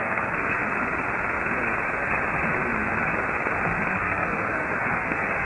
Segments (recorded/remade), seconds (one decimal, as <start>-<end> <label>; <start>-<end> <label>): 0.0-0.6 remade; 0.6-3.9 recorded; 3.9-5.5 remade